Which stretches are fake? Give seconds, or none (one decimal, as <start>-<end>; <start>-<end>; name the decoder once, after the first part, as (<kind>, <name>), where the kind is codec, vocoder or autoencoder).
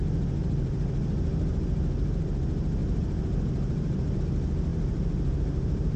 0.0-2.3 (vocoder, BigVGAN v2); 2.8-4.2; 4.7-6.0